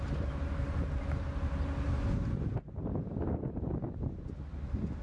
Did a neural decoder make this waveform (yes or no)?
no